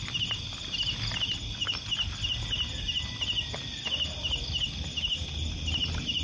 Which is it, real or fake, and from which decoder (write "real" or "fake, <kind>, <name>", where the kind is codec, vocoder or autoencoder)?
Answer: real